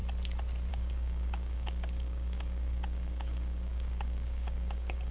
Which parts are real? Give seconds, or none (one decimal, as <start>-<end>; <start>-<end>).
0.0-0.7